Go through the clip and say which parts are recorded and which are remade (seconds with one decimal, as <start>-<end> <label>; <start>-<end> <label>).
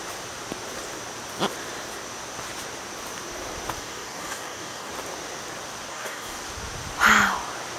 0.0-3.8 recorded; 3.8-4.9 remade; 4.9-5.9 recorded; 5.9-6.4 remade; 6.4-7.8 recorded